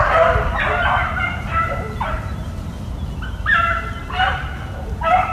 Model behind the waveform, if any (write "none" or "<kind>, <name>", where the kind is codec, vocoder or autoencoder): none